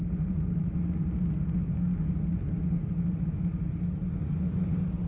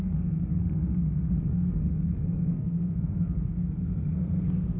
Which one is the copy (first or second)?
second